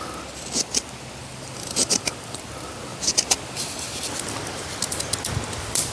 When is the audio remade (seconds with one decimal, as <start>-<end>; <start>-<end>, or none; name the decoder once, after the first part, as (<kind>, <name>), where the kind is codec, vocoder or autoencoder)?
1.2-2.4 (vocoder, BigVGAN v2)